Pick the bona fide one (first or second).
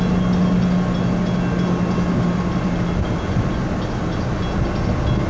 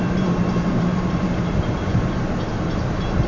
first